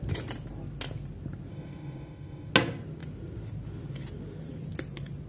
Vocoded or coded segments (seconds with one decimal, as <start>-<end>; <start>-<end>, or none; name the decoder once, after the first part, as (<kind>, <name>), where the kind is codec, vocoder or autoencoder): 1.5-2.5 (autoencoder, DAC-VAE)

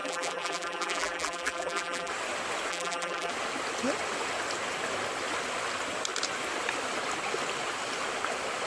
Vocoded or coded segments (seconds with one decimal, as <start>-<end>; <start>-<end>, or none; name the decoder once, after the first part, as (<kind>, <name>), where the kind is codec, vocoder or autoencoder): 0.0-2.1 (vocoder, BigVGAN v2); 2.7-3.3